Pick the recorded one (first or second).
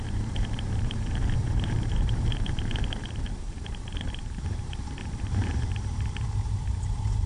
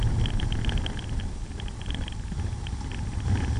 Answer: second